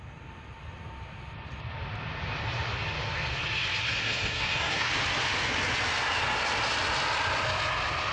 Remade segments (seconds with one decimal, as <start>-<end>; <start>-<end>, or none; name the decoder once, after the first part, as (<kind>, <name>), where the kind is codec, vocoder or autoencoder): 3.8-4.9 (codec, SNAC)